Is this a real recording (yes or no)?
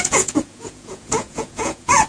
no